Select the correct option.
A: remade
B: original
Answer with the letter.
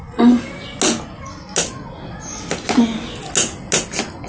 B